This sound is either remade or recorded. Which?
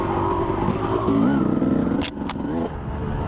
recorded